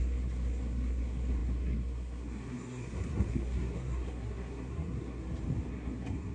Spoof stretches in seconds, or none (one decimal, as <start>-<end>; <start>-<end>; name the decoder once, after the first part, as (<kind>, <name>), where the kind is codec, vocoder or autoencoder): 0.0-5.2 (codec, SNAC); 5.7-6.3